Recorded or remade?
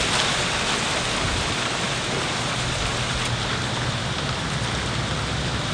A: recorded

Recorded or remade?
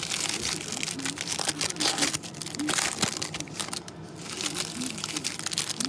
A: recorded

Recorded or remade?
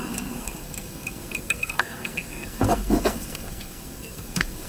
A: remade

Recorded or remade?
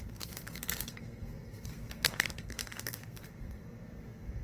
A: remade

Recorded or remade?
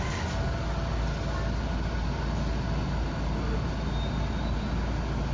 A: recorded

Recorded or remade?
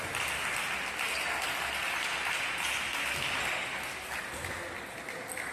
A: recorded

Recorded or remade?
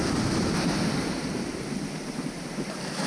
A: recorded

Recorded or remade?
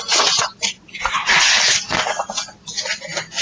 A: recorded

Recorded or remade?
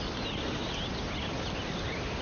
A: recorded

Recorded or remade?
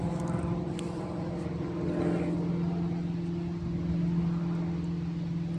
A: recorded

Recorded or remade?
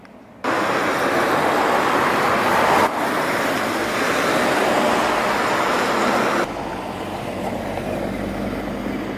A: recorded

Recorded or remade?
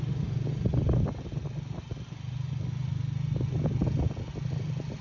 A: recorded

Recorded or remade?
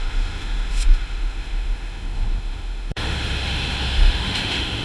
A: remade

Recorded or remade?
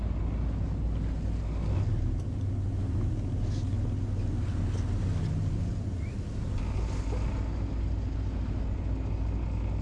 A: recorded